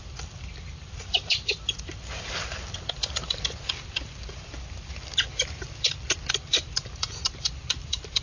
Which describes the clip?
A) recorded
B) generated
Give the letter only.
B